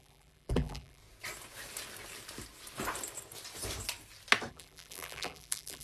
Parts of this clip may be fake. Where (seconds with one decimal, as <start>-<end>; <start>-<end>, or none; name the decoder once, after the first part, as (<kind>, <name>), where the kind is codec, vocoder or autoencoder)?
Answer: 0.0-1.0 (vocoder, BigVGAN v2); 4.5-5.8